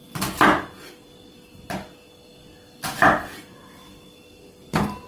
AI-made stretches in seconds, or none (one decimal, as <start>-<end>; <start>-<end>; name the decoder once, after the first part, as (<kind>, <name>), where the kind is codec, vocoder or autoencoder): none